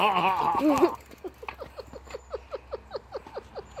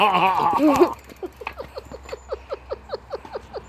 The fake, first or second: second